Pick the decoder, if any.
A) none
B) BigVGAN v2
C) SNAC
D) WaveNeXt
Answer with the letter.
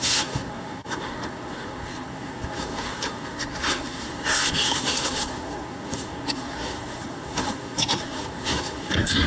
C